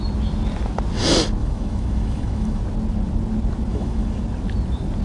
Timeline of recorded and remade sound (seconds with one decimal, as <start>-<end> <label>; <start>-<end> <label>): 0.0-1.4 recorded; 1.4-2.6 remade; 2.6-3.7 recorded; 3.7-4.2 remade; 4.2-5.0 recorded